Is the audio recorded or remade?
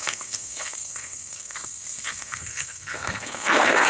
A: remade